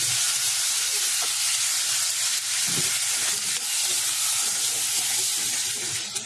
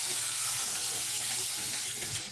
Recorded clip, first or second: first